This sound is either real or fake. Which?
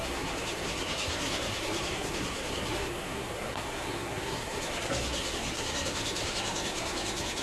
fake